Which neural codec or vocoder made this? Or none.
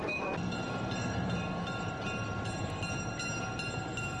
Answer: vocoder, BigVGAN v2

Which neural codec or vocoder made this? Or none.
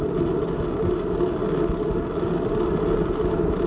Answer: none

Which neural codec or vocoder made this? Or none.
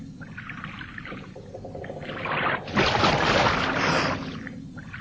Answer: none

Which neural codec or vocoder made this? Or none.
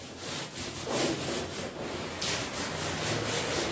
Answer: none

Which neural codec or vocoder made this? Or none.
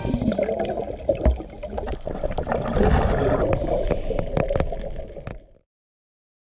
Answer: none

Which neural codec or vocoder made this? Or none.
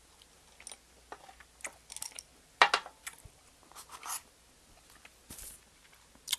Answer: none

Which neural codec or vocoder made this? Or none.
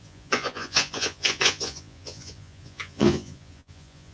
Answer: vocoder, Vocos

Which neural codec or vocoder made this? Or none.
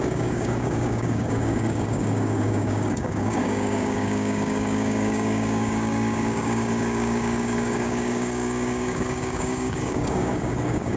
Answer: codec, DAC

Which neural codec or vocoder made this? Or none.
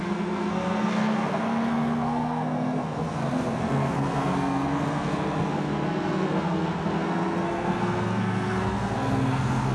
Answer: codec, SNAC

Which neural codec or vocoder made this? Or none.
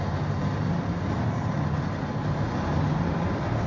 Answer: none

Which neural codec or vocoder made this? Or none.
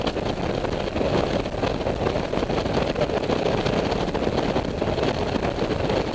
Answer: none